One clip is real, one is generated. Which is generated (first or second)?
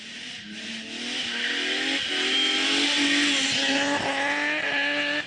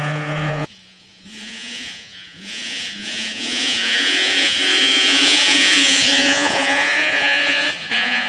second